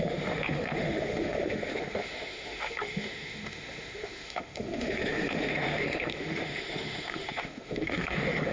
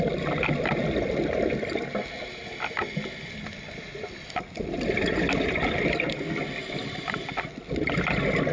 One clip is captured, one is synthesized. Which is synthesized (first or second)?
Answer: first